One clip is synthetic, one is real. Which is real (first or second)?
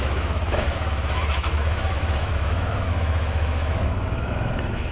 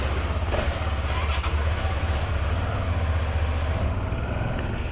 second